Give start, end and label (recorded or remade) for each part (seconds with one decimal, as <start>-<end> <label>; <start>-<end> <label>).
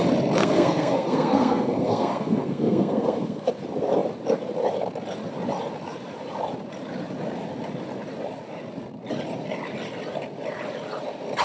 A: 0.0-0.4 recorded; 0.4-3.5 remade; 3.5-11.4 recorded